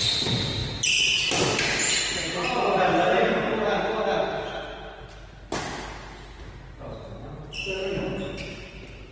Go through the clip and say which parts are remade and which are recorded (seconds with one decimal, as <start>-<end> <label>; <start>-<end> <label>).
0.0-9.1 recorded